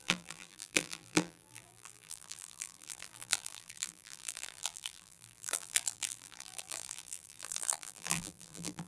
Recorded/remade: remade